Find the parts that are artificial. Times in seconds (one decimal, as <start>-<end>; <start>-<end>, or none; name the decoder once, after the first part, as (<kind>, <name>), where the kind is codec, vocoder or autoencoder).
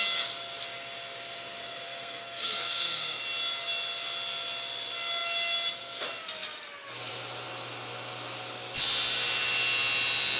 1.6-3.2 (codec, SNAC)